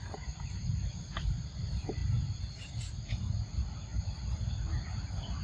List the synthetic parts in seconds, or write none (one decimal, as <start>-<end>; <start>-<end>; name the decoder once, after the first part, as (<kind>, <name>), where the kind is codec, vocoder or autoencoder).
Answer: none